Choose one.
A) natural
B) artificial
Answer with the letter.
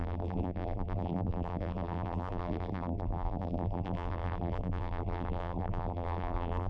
B